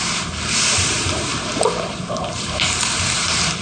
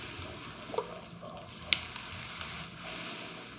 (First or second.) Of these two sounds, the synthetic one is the first